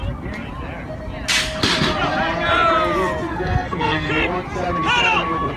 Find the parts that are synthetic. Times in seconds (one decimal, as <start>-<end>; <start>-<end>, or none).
3.3-4.1